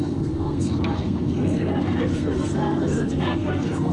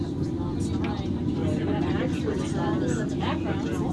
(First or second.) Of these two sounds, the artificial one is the first